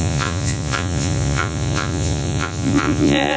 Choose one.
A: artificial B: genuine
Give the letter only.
A